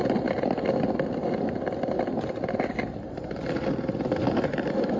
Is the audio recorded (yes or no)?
yes